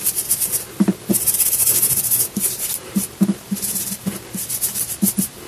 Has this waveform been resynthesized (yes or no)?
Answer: yes